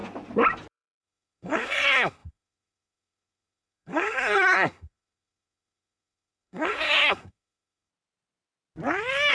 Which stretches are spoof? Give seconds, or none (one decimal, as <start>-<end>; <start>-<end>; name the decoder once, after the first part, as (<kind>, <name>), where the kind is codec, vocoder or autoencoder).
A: 0.7-7.9 (codec, SNAC)